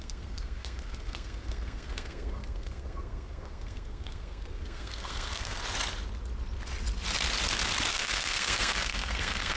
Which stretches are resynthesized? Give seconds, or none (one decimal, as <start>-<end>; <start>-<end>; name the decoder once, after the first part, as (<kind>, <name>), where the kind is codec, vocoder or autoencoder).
0.0-5.6 (codec, SNAC); 7.9-9.6